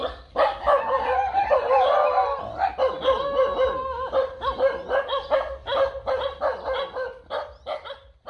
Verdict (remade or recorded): recorded